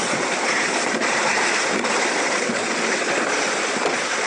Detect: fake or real real